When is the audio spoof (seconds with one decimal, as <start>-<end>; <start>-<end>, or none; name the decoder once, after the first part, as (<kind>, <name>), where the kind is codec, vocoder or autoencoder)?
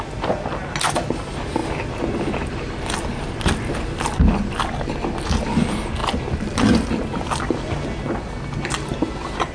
none